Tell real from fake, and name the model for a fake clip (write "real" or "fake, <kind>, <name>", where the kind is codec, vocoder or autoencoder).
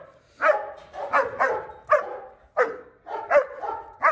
real